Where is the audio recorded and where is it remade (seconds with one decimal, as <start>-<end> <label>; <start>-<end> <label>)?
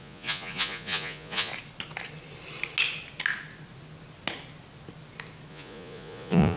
0.0-1.5 remade; 1.5-5.5 recorded; 5.5-6.6 remade